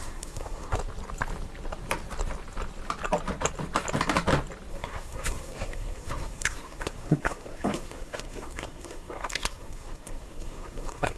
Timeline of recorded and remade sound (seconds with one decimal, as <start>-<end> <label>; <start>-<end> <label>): 0.0-0.8 remade; 0.8-4.7 recorded; 4.7-11.2 remade